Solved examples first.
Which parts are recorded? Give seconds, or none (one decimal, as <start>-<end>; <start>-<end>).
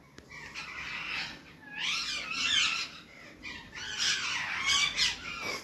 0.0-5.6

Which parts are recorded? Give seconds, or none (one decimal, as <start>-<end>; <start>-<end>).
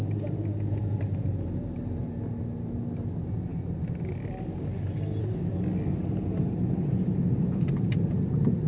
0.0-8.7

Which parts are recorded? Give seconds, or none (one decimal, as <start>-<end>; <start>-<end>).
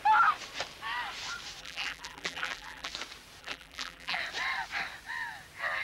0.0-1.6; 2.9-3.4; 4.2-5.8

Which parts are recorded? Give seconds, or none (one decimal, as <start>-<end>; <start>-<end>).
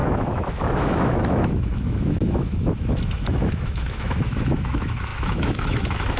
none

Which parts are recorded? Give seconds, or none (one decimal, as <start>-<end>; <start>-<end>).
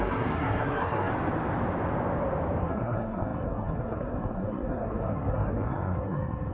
1.1-2.6